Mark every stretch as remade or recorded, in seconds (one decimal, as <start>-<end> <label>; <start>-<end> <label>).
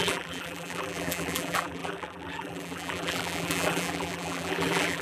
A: 0.0-5.0 remade